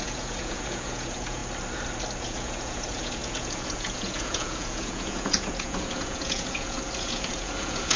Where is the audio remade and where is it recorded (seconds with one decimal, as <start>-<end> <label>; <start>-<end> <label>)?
0.0-1.4 remade; 1.4-2.2 recorded; 2.2-8.0 remade